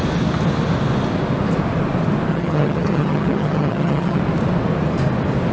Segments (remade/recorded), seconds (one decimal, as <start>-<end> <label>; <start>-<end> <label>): 0.0-2.3 recorded; 2.3-4.2 remade; 4.2-5.5 recorded